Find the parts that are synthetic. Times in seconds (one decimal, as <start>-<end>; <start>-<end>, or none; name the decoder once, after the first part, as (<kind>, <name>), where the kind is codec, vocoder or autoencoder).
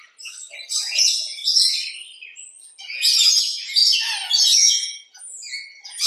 0.9-1.4 (vocoder, Vocos); 2.6-3.8; 4.4-6.1